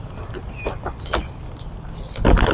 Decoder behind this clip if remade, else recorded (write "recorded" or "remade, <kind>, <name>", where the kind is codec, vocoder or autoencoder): recorded